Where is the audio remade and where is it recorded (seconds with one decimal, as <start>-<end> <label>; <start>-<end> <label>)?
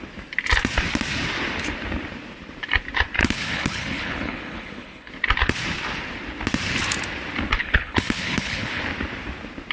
0.0-3.2 recorded; 3.2-5.1 remade; 5.1-7.6 recorded; 7.6-8.8 remade; 8.8-9.7 recorded